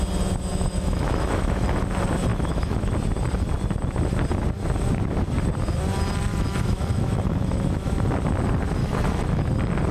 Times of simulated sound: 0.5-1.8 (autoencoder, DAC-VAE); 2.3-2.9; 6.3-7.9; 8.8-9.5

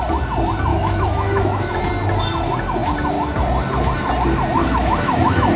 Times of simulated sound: 0.7-1.8 (autoencoder, DAC-VAE); 4.6-5.6